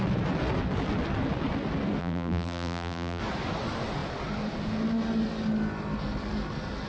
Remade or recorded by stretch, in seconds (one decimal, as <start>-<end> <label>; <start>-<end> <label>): 0.0-2.0 recorded; 2.0-3.2 remade; 3.2-6.9 recorded